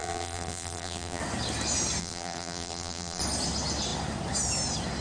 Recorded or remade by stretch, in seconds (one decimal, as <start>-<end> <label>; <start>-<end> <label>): 0.0-1.2 remade; 1.2-2.0 recorded; 2.0-3.2 remade; 3.2-5.0 recorded